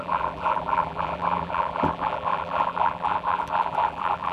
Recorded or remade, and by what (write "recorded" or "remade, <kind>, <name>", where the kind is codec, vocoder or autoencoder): remade, vocoder, BigVGAN v2